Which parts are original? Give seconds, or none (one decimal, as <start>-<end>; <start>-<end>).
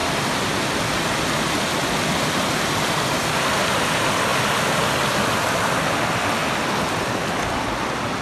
0.0-8.2